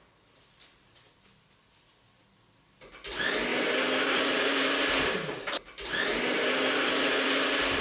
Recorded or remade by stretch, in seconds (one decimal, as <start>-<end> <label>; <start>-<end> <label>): 0.0-3.5 recorded; 3.5-5.0 remade; 5.0-6.1 recorded; 6.1-7.8 remade